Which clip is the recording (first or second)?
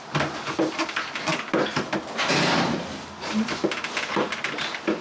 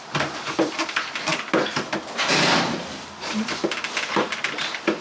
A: first